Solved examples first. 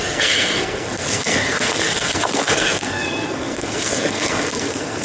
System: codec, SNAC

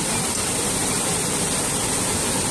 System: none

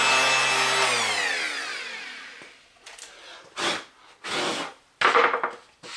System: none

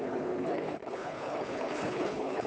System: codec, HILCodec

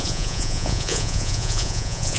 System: vocoder, Vocos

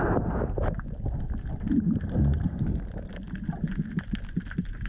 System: none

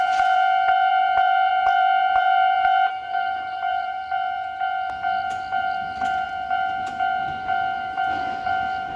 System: vocoder, BigVGAN v2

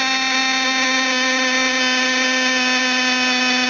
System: none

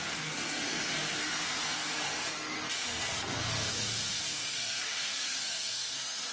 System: codec, SNAC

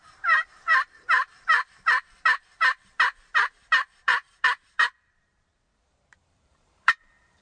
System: vocoder, BigVGAN v2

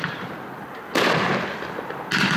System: none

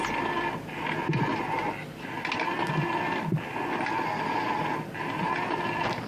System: none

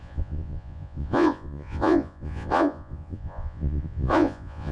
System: vocoder, Vocos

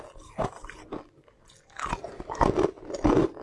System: none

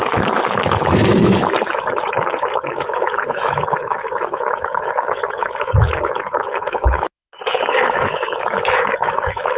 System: autoencoder, DAC-VAE